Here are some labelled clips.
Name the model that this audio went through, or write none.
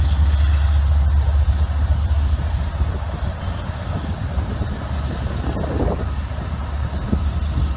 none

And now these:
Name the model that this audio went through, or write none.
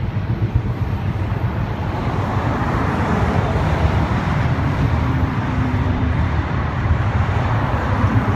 vocoder, BigVGAN v2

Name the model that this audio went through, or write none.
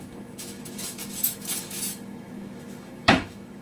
autoencoder, DAC-VAE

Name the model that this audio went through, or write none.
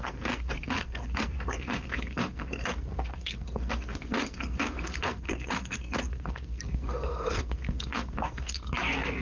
codec, SNAC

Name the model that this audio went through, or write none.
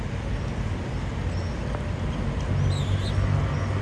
none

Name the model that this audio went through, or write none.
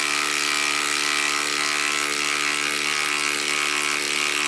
none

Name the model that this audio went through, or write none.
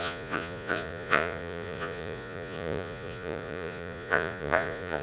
vocoder, Vocos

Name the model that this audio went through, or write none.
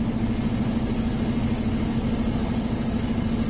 none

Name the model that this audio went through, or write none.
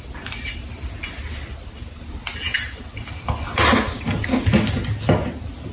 none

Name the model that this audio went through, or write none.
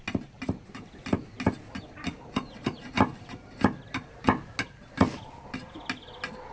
none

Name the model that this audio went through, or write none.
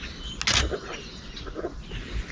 none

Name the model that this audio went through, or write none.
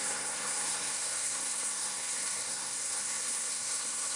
codec, SNAC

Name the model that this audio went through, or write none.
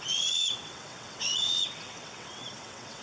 vocoder, WaveNeXt